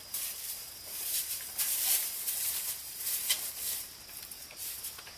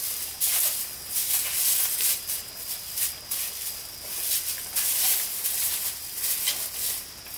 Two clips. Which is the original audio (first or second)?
second